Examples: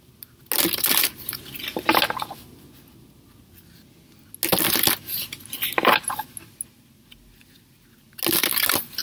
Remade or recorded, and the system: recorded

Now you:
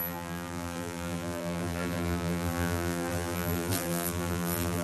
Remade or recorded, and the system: remade, vocoder, BigVGAN v2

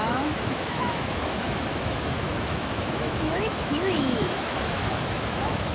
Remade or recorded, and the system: remade, autoencoder, DAC-VAE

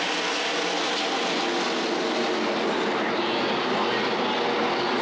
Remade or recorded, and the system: recorded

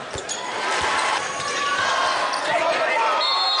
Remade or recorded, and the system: recorded